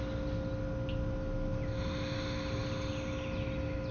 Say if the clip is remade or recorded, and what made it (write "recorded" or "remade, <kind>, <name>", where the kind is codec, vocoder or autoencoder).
recorded